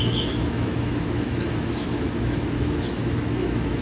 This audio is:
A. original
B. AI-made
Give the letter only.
B